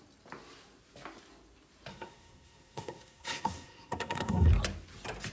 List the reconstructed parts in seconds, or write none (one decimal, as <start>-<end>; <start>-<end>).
1.9-4.5